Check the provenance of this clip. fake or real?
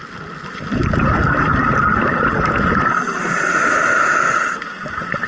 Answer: real